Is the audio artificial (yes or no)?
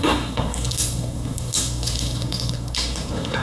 yes